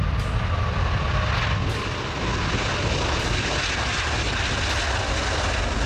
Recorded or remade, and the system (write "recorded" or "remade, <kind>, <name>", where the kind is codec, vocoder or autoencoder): recorded